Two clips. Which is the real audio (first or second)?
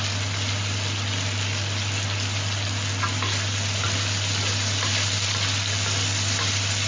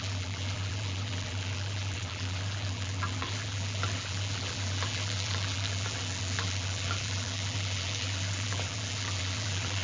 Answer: first